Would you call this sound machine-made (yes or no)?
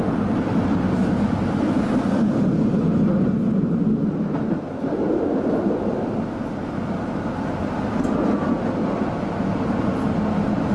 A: no